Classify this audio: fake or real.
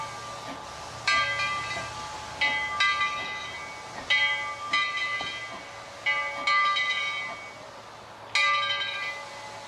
real